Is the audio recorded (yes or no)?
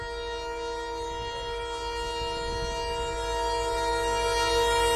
yes